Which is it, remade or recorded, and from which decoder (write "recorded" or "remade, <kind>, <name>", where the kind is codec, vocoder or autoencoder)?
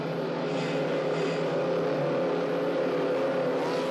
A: recorded